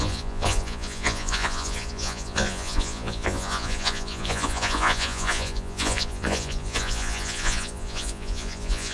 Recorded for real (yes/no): no